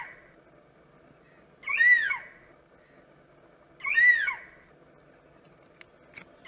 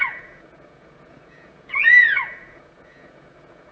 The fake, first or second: second